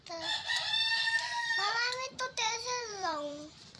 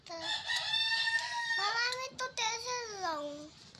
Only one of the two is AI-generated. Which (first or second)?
first